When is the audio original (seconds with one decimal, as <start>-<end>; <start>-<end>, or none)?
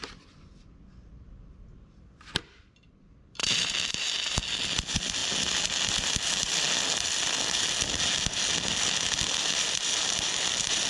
0.0-3.4; 4.4-10.9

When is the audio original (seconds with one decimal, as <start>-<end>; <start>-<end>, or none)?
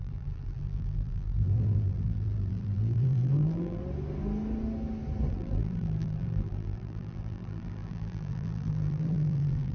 3.8-5.3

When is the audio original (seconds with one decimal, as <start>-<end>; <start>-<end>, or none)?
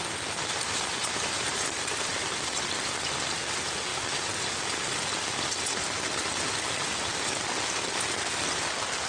0.0-1.0; 2.1-9.1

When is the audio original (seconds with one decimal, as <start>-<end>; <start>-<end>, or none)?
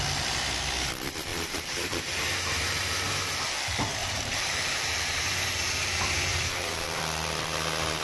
0.0-1.3; 3.4-4.0; 5.2-6.3; 7.0-8.0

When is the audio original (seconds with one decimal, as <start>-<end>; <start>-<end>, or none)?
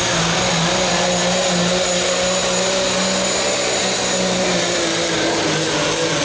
0.0-6.2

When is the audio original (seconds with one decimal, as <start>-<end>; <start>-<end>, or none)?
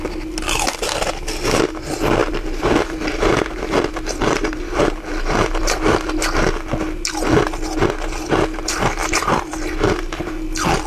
0.0-2.2; 6.7-9.0